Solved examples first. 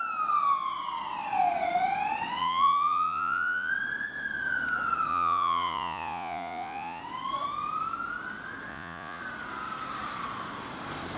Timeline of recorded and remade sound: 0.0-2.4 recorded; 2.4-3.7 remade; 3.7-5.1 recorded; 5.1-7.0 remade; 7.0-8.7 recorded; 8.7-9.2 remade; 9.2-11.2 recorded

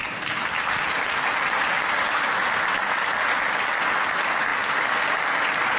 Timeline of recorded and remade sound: 0.0-5.8 recorded